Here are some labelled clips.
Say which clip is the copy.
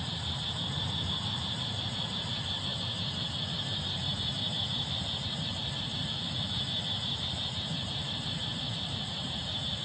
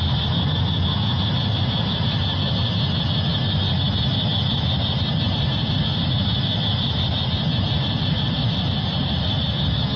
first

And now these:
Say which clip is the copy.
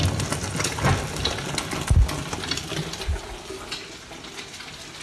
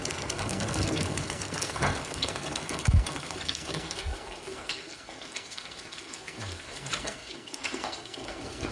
second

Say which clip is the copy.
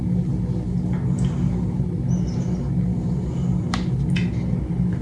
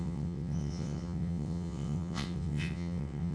second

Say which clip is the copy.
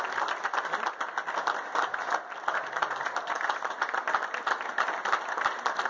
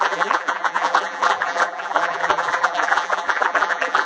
second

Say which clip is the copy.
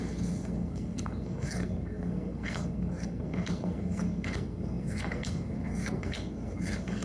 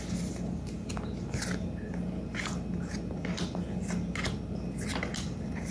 first